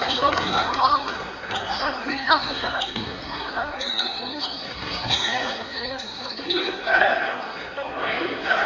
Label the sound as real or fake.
fake